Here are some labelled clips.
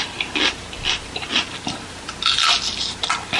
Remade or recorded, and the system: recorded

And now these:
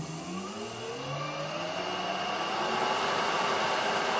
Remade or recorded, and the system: recorded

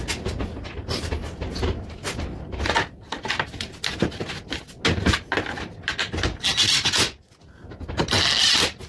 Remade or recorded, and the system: recorded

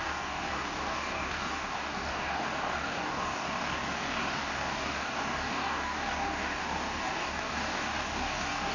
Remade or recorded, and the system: remade, codec, DAC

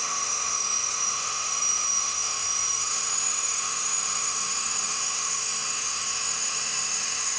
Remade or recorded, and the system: remade, autoencoder, DAC-VAE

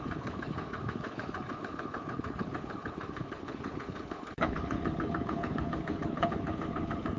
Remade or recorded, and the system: remade, codec, HILCodec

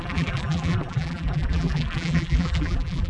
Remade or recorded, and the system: remade, vocoder, BigVGAN v2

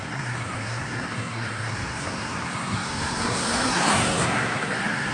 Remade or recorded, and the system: remade, codec, SNAC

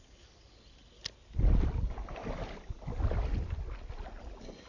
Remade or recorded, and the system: recorded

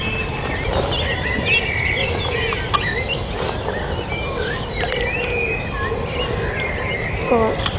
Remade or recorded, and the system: recorded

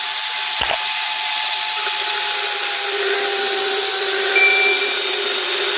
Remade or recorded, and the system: remade, vocoder, BigVGAN v2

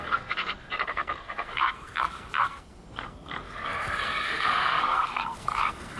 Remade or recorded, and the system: remade, codec, SNAC